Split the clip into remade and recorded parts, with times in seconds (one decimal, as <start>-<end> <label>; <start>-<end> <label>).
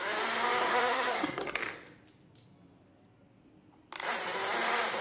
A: 0.0-0.6 recorded; 0.6-1.6 remade; 1.6-5.0 recorded